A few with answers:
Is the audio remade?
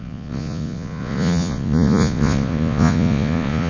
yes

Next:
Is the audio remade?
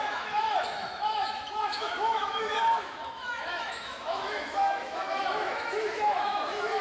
yes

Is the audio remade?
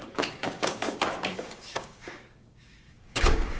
yes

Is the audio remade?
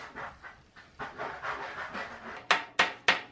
no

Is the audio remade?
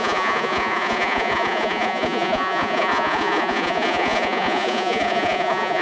yes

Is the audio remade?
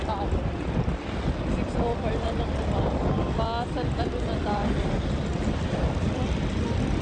no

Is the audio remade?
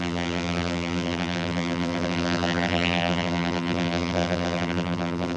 yes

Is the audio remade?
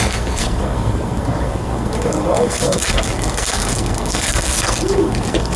yes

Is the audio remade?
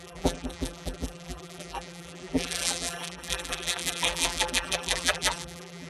yes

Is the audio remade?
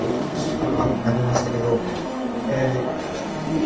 yes